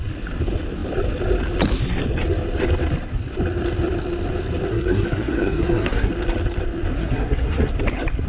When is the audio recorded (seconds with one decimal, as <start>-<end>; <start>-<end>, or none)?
0.0-4.7; 6.1-6.9; 7.7-8.3